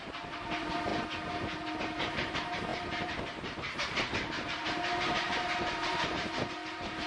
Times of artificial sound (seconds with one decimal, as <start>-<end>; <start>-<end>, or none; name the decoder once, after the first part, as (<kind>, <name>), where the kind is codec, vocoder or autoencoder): 0.0-0.9 (vocoder, BigVGAN v2); 1.7-7.1